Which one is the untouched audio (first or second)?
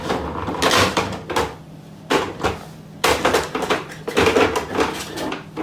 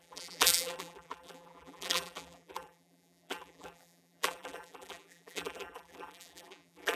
first